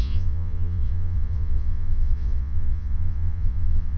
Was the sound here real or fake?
fake